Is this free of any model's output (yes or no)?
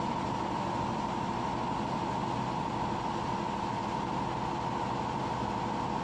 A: yes